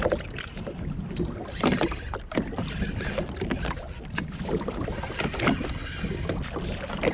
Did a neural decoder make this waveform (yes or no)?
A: no